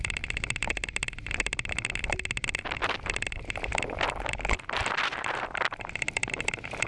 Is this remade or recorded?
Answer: recorded